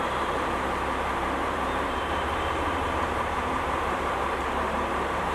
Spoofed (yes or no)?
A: yes